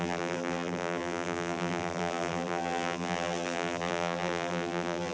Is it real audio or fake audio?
fake